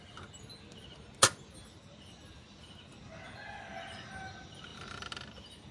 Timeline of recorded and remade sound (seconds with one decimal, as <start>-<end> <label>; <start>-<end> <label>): 0.0-5.7 recorded